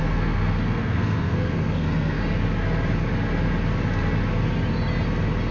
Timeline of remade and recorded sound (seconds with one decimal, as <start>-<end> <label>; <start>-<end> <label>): 0.0-2.2 remade; 2.2-5.5 recorded